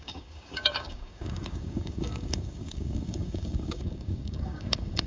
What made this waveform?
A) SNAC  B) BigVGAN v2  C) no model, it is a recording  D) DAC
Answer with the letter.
D